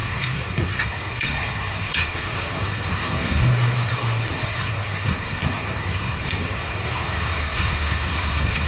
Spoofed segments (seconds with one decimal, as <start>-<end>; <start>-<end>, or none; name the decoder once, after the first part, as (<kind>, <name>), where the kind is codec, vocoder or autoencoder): 0.0-8.7 (codec, SNAC)